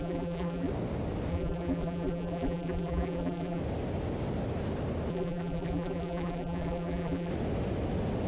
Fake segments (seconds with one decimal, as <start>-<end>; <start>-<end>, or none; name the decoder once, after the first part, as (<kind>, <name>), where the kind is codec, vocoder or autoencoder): 0.0-0.7 (vocoder, BigVGAN v2); 1.3-3.6; 5.1-7.3